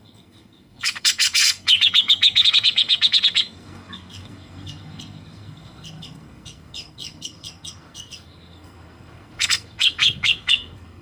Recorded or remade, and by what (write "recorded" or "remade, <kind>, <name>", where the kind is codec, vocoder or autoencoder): remade, codec, SNAC